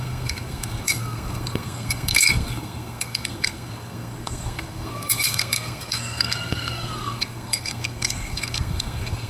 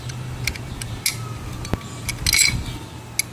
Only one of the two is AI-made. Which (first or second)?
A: first